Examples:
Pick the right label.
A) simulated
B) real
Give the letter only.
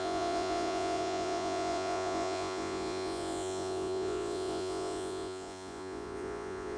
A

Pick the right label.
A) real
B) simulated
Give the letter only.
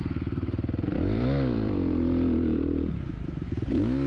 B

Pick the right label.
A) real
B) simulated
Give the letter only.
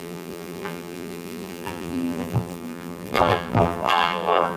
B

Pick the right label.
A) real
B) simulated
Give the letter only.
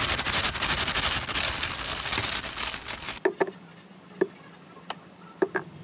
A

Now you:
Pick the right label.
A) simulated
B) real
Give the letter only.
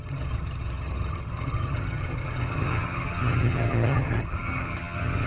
A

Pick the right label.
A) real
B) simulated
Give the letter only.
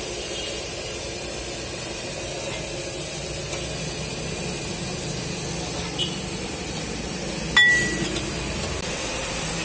A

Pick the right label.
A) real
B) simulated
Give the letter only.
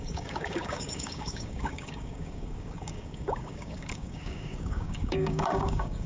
B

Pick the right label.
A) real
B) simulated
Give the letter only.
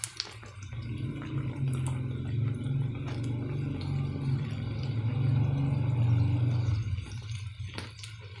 A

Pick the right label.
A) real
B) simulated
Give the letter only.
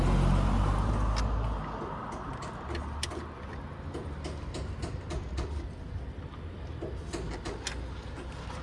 A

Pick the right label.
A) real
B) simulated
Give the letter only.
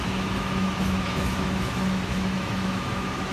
B